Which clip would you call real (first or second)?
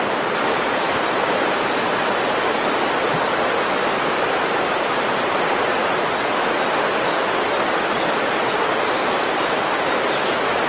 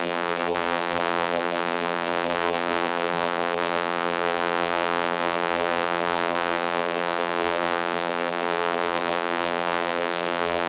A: first